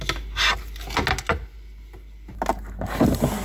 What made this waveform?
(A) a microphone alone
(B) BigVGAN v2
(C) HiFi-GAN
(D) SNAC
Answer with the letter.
A